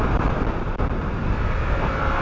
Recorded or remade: recorded